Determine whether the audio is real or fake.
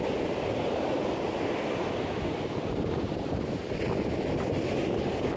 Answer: real